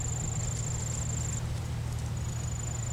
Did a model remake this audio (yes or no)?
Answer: no